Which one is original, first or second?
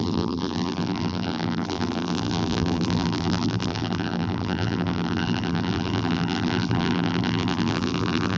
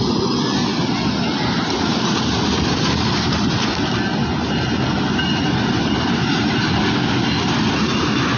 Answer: second